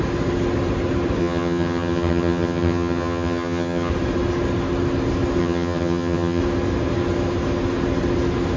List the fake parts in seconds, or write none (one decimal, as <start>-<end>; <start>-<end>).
1.2-3.9; 5.4-6.4